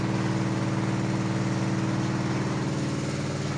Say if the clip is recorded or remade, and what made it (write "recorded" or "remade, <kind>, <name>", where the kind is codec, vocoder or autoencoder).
recorded